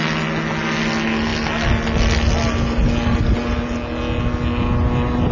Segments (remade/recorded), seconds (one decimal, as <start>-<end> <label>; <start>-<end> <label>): 0.0-5.3 recorded